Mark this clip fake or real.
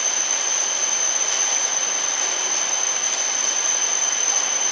real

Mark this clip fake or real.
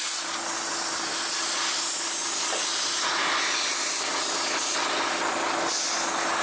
real